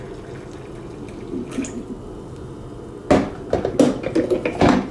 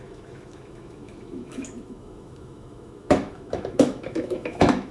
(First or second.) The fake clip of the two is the second